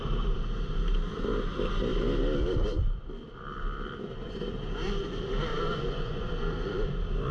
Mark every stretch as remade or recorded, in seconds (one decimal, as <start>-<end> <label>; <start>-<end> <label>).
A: 0.0-5.5 recorded; 5.5-6.3 remade; 6.3-7.3 recorded